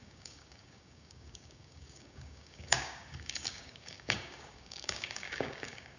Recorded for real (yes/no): no